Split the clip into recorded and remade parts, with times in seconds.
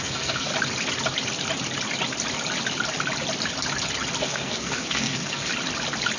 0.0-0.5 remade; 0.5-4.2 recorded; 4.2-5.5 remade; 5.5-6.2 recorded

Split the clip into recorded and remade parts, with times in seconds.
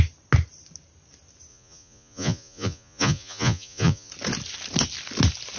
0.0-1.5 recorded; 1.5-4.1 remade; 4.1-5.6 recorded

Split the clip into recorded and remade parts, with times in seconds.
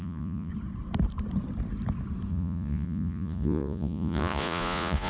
0.0-0.5 remade; 0.5-2.3 recorded; 2.3-5.1 remade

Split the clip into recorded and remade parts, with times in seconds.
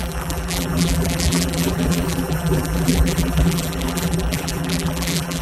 0.0-5.4 remade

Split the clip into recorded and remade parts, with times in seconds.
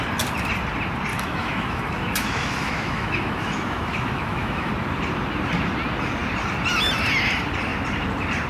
0.0-1.1 recorded; 1.1-4.7 remade; 4.7-8.5 recorded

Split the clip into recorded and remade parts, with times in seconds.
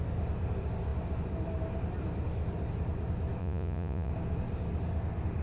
0.0-3.4 recorded; 3.4-4.1 remade; 4.1-5.4 recorded